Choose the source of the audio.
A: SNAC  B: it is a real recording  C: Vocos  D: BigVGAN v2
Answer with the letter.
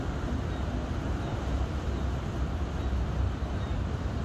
B